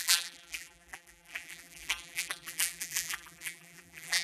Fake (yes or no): yes